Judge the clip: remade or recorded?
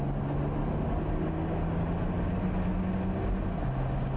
recorded